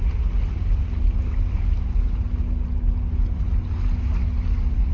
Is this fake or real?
real